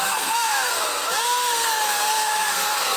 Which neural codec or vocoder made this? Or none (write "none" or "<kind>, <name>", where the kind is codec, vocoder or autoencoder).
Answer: codec, SNAC